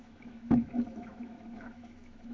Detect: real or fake fake